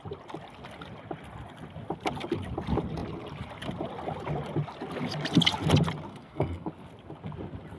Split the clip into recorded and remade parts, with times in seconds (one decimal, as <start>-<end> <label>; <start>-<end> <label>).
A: 0.0-6.1 recorded; 6.1-6.7 remade; 6.7-7.8 recorded